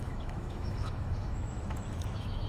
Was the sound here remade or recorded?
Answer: remade